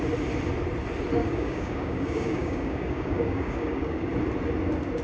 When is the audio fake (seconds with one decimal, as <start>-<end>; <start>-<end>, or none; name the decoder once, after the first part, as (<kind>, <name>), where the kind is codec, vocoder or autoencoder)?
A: 1.2-4.1 (codec, DAC)